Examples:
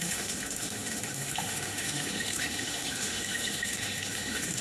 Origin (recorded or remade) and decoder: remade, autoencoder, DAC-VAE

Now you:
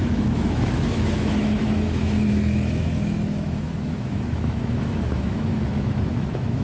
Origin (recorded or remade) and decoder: remade, autoencoder, DAC-VAE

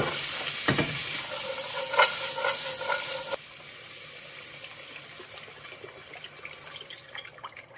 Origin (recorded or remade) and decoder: recorded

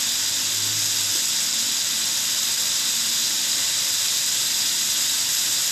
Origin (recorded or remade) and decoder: recorded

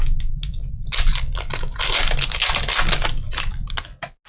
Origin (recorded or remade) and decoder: recorded